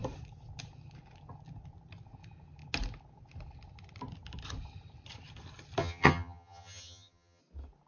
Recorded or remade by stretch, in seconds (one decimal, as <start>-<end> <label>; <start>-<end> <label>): 0.0-5.8 recorded; 5.8-7.4 remade; 7.4-7.9 recorded